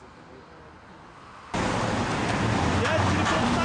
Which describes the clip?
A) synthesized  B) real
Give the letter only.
B